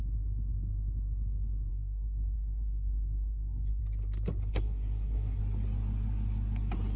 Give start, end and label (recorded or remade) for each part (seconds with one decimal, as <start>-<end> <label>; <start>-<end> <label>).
0.0-1.7 recorded; 1.7-3.8 remade; 3.8-4.5 recorded; 4.5-5.4 remade; 5.4-7.0 recorded